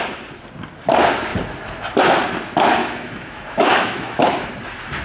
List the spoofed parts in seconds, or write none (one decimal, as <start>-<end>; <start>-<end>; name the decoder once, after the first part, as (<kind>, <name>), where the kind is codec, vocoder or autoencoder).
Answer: 2.8-4.3 (autoencoder, DAC-VAE)